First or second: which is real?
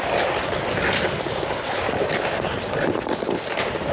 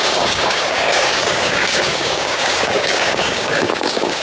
first